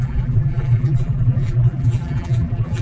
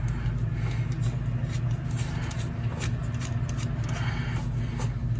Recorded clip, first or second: second